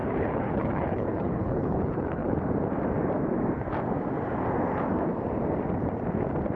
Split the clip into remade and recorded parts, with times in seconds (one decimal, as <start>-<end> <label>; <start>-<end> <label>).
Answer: 0.0-2.4 remade; 2.4-6.6 recorded